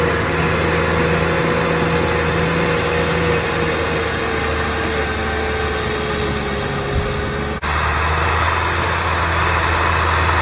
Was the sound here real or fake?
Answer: real